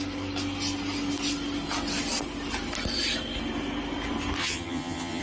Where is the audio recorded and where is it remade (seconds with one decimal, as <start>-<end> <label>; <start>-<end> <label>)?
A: 0.0-4.4 recorded; 4.4-5.2 remade